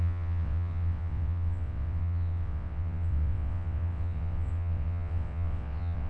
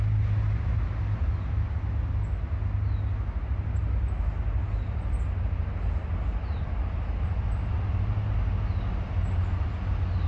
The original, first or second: second